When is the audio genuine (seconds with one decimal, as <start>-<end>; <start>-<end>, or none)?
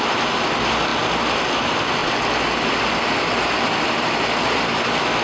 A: 0.0-5.2